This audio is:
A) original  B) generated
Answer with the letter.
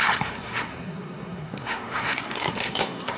B